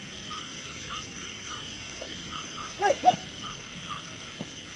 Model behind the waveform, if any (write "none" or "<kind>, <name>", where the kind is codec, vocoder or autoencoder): codec, SNAC